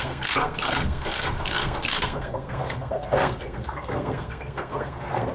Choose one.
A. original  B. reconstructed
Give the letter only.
B